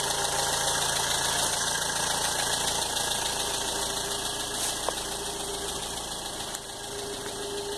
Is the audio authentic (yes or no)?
yes